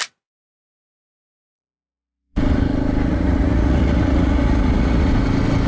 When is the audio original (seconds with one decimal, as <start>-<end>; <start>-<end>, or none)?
0.0-1.5; 2.4-3.1; 5.1-5.7